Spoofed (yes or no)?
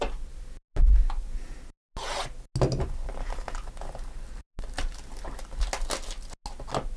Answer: no